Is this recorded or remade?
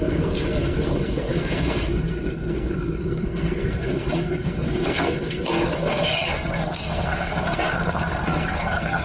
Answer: remade